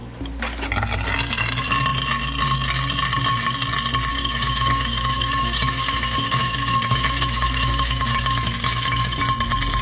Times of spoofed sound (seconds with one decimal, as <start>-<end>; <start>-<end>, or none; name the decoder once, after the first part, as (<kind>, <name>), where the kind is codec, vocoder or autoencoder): 4.1-9.2 (autoencoder, DAC-VAE)